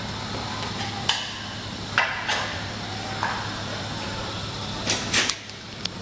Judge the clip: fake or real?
real